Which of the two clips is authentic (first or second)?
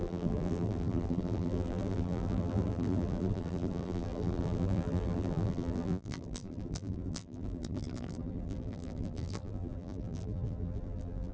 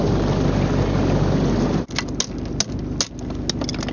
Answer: second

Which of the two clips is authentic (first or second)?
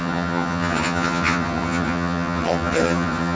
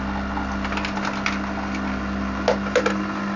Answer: second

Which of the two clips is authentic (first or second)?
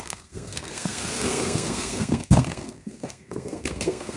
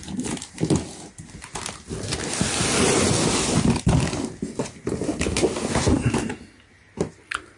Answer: second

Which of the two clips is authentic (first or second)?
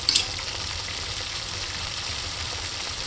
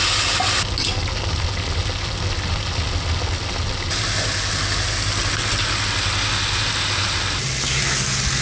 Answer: second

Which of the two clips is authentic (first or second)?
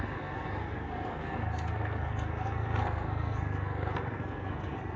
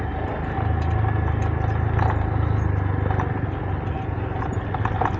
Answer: second